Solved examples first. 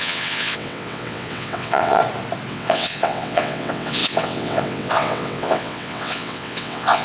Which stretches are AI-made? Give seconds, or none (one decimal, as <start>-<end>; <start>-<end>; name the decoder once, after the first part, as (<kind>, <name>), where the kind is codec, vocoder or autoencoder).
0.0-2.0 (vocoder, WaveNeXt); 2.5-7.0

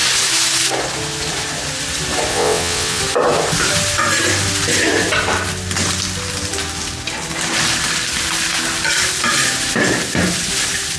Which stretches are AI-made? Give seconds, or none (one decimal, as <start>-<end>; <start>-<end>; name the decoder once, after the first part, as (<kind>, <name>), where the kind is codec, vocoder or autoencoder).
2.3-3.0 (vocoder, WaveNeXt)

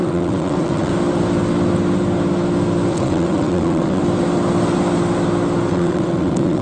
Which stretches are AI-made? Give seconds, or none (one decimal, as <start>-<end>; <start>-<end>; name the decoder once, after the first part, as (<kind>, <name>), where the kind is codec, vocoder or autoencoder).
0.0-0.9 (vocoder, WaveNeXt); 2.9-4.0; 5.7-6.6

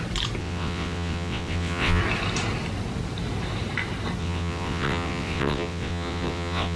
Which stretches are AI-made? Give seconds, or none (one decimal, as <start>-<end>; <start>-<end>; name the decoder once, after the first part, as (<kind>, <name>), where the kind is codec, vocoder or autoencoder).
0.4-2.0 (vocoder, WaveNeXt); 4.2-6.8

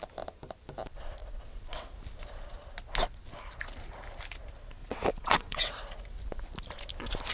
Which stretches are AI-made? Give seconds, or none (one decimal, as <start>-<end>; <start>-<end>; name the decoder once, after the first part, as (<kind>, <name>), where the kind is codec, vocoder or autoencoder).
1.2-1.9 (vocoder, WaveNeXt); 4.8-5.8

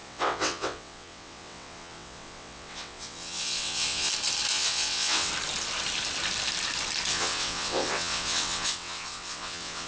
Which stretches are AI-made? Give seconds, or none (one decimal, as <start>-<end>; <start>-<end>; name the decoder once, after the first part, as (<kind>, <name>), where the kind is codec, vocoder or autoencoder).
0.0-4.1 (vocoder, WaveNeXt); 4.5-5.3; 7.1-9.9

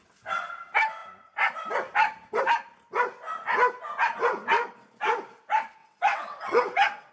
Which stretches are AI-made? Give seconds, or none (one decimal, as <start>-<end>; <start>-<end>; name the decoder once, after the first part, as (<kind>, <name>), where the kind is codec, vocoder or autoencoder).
5.8-7.1 (vocoder, WaveNeXt)